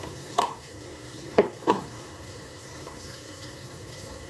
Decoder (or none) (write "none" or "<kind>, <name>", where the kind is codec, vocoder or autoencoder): codec, SNAC